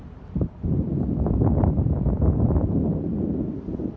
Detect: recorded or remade recorded